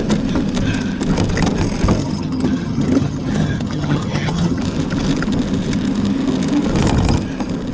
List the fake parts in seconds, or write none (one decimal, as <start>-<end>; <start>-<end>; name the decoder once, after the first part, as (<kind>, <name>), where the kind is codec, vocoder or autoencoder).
2.0-4.6 (vocoder, HiFi-GAN)

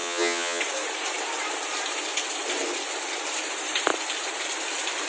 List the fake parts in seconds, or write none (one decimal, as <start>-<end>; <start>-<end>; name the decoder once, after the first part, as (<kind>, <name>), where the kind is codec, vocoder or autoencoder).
0.0-0.6 (vocoder, HiFi-GAN)